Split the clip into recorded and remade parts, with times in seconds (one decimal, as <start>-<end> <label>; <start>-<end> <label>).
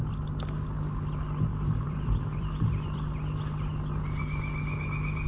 0.0-1.5 recorded; 1.5-2.5 remade; 2.5-5.3 recorded